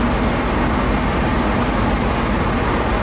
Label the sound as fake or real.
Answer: real